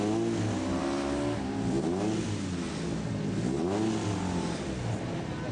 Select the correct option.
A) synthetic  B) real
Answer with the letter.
B